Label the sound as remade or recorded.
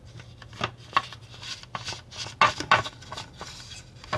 recorded